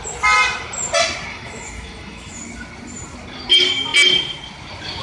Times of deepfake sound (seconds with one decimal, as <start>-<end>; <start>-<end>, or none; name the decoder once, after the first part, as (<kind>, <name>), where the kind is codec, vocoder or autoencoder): 1.3-2.4 (autoencoder, DAC-VAE)